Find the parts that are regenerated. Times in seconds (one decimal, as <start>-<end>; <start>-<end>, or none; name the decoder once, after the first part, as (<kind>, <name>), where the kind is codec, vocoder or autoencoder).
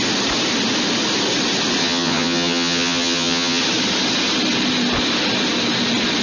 1.8-3.6 (vocoder, HiFi-GAN)